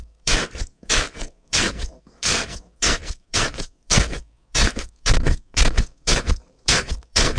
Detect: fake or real fake